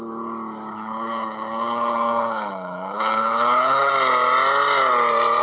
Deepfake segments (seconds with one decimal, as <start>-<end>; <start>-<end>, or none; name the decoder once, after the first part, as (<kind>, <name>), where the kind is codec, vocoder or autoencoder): 0.7-3.9 (codec, HILCodec)